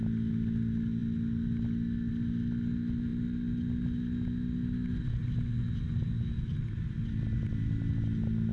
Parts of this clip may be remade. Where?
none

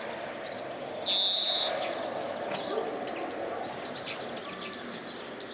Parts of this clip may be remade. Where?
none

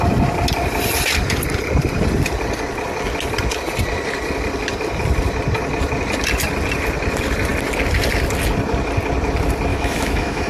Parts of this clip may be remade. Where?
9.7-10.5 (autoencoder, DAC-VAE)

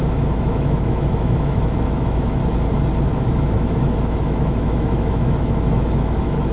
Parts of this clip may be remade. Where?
0.0-2.4 (autoencoder, DAC-VAE); 3.1-6.5